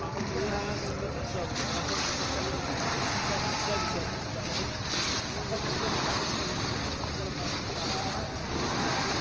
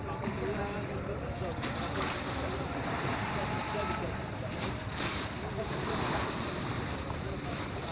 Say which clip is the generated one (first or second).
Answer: second